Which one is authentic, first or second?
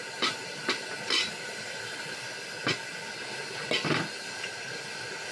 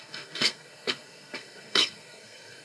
first